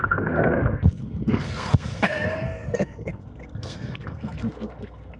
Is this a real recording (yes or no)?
no